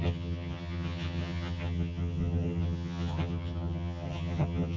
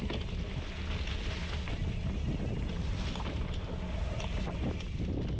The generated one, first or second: first